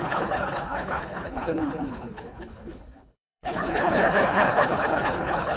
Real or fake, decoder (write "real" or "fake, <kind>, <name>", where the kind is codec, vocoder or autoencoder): fake, codec, HILCodec